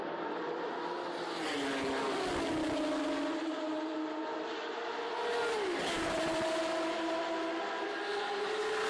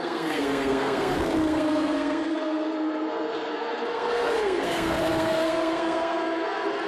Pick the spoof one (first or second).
second